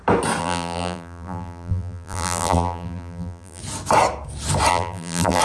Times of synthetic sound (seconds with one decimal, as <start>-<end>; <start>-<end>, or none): 0.4-3.6; 4.7-5.4